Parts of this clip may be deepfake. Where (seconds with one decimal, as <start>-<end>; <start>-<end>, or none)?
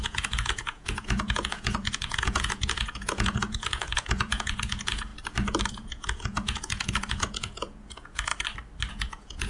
0.0-5.1; 5.7-8.3; 8.9-9.5